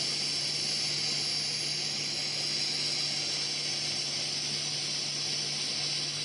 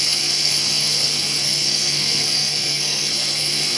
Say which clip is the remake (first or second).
second